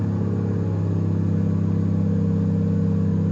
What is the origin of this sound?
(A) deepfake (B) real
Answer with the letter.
B